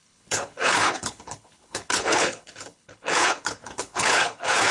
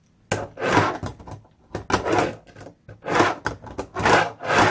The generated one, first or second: first